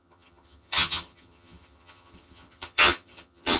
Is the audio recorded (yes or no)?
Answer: no